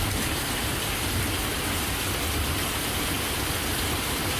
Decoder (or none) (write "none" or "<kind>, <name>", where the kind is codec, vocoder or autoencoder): none